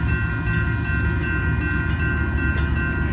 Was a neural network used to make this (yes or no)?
no